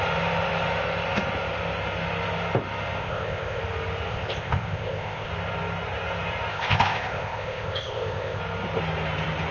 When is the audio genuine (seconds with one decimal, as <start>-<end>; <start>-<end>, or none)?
0.0-3.0; 3.6-4.1; 5.3-6.5; 8.4-9.5